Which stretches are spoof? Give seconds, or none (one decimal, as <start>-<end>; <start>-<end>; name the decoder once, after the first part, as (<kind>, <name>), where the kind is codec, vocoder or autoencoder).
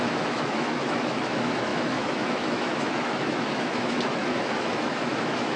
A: 0.0-5.6 (autoencoder, DAC-VAE)